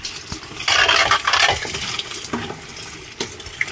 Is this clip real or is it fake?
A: real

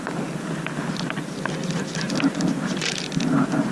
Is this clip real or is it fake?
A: real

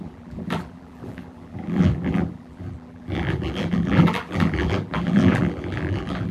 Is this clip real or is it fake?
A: fake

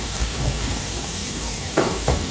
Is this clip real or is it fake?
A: fake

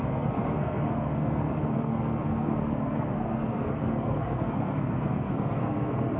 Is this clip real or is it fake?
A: fake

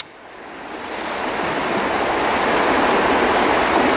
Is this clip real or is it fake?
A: real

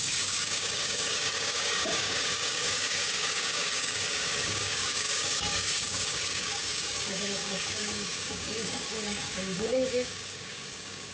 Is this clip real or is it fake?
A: fake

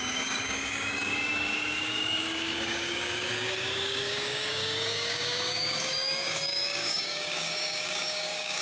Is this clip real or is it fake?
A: fake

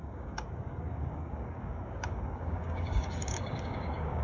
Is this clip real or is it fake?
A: fake